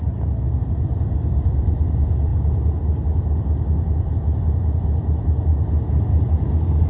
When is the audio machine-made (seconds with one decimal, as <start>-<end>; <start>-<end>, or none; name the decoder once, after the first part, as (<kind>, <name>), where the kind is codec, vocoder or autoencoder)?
none